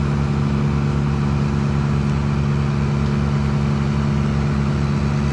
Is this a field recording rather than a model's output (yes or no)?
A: yes